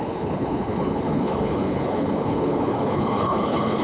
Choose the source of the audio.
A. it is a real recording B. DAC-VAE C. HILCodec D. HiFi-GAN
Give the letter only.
C